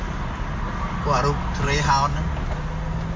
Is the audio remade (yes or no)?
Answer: no